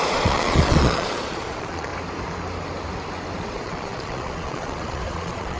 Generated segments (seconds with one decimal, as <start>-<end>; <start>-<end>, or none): 0.0-1.9; 3.4-5.6